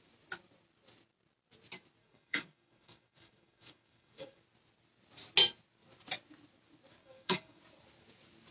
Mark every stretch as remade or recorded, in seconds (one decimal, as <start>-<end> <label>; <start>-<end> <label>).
0.0-2.0 recorded; 2.0-4.4 remade; 4.4-7.0 recorded; 7.0-7.6 remade; 7.6-8.5 recorded